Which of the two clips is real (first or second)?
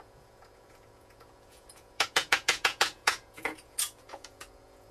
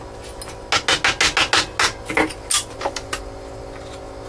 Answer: second